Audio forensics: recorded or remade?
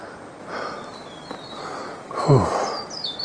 recorded